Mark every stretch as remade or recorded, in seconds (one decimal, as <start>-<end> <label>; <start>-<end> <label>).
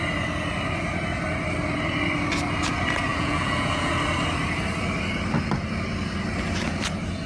0.0-3.1 recorded; 3.1-3.9 remade; 3.9-7.3 recorded